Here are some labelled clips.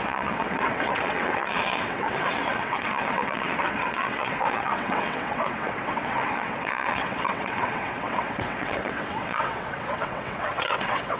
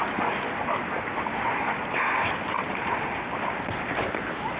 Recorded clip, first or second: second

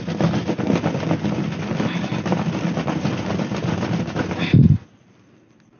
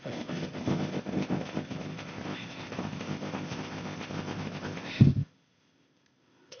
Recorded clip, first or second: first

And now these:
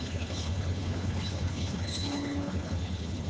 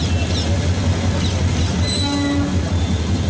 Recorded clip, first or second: second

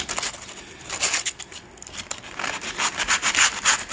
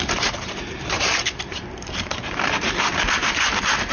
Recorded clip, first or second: first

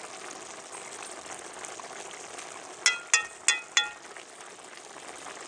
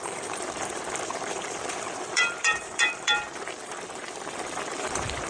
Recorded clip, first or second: first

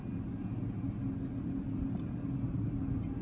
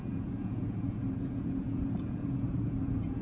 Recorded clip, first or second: first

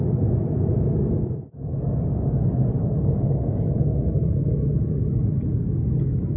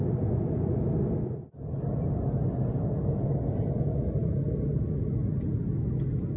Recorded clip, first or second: second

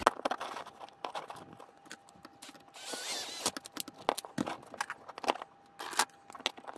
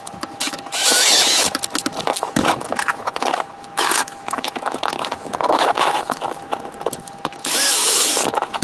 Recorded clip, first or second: first